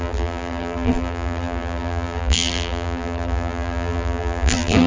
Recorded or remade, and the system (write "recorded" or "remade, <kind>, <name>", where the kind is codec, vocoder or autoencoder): remade, vocoder, BigVGAN v2